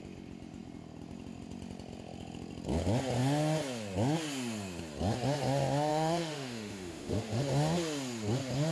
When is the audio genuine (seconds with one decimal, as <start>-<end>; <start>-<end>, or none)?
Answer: 0.0-5.9; 7.4-8.7